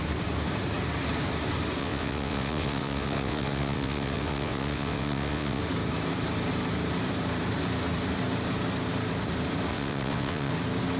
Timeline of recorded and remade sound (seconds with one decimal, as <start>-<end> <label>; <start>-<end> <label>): 0.0-1.8 recorded; 1.8-5.6 remade; 5.6-9.7 recorded; 9.7-10.5 remade; 10.5-11.0 recorded